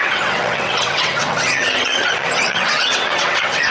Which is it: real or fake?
fake